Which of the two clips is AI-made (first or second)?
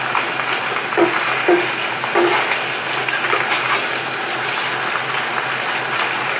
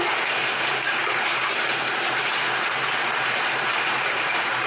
second